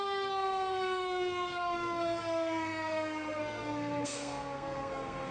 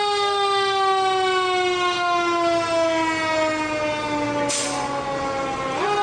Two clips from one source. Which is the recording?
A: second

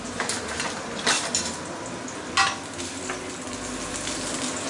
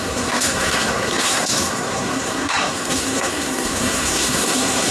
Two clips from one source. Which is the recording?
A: first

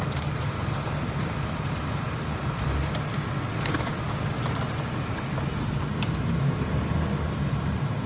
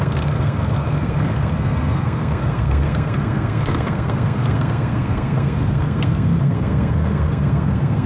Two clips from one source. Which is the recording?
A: first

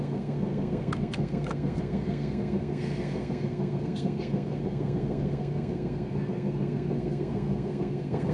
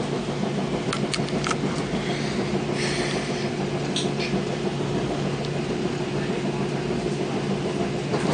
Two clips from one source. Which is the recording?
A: second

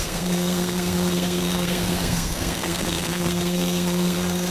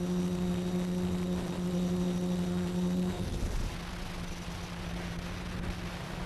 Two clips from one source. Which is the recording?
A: second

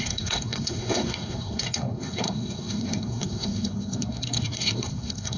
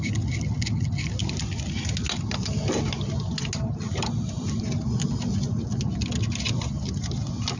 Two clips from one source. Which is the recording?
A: second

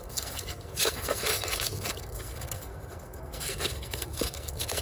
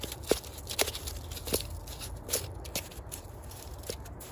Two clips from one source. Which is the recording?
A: second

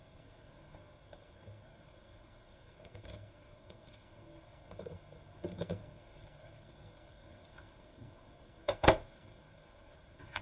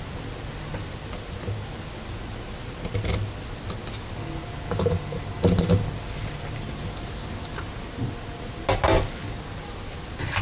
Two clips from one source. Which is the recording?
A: second